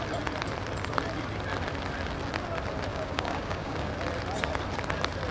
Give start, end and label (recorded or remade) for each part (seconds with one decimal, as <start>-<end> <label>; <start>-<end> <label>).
0.0-2.9 recorded; 2.9-3.9 remade; 3.9-5.3 recorded